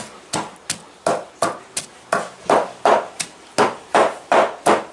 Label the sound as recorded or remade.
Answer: recorded